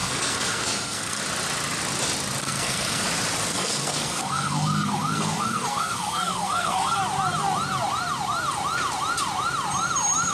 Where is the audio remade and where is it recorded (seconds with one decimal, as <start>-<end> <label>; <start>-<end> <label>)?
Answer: 0.0-1.2 remade; 1.2-2.4 recorded; 2.4-3.0 remade; 3.0-3.5 recorded; 3.5-7.0 remade; 7.0-10.3 recorded